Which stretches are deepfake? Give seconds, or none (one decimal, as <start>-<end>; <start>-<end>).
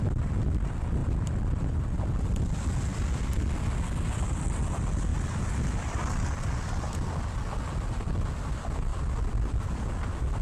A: 2.9-3.6; 5.1-7.2; 8.9-9.9